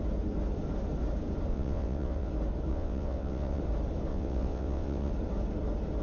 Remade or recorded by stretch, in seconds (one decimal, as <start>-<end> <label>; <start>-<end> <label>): 0.0-1.5 recorded; 1.5-2.3 remade; 2.3-2.7 recorded; 2.7-3.6 remade; 3.6-4.1 recorded; 4.1-5.1 remade; 5.1-6.0 recorded